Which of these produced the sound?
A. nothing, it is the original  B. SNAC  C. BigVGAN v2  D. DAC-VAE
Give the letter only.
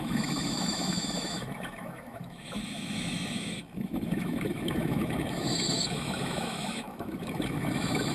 D